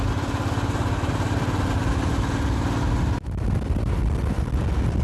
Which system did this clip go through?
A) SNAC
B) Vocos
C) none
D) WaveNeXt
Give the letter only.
C